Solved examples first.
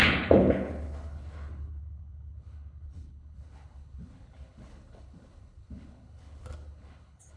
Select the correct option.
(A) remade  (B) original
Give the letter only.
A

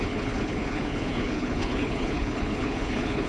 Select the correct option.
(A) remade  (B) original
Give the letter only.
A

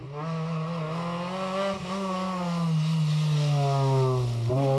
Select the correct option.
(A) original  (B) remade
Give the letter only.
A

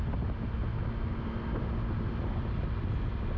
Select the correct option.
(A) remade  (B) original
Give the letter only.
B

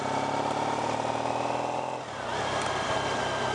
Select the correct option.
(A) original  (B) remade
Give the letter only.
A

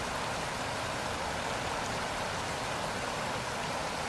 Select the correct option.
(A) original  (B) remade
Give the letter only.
B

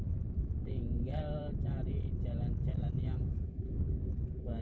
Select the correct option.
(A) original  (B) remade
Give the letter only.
B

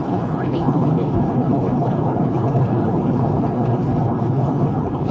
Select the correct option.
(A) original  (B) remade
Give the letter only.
B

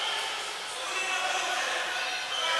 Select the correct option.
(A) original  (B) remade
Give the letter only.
A